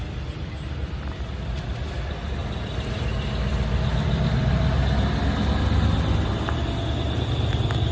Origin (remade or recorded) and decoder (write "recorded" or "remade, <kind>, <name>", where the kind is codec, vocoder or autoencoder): recorded